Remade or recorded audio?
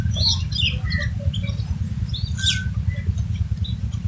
recorded